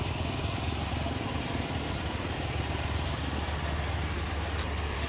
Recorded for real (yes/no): no